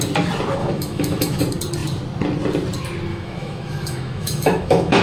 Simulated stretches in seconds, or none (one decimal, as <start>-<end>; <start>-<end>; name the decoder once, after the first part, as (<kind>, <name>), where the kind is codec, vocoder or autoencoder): 0.6-1.4 (autoencoder, DAC-VAE); 3.1-5.0